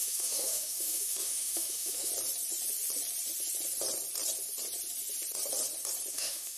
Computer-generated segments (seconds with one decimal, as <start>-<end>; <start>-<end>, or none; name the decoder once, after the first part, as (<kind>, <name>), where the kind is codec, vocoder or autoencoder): 0.0-2.1 (autoencoder, DAC-VAE); 6.1-6.6